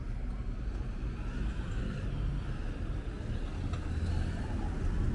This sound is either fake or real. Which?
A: real